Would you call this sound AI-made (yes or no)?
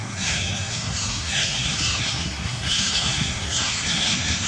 yes